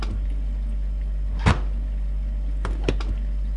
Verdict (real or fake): real